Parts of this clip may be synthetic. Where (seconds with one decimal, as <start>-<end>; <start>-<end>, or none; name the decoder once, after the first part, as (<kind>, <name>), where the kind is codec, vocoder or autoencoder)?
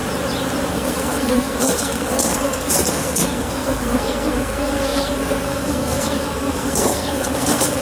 0.7-7.8 (codec, SNAC)